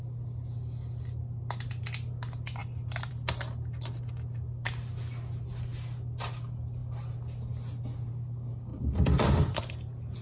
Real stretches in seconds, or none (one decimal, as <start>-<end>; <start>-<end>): 0.0-8.7; 9.6-10.2